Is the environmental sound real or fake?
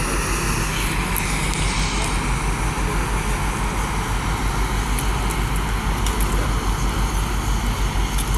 real